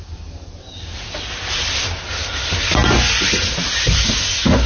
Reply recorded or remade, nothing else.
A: recorded